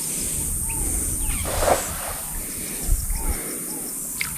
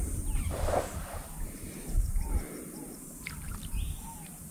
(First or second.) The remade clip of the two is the second